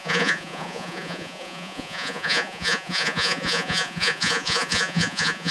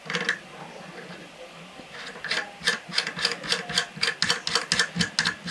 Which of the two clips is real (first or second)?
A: second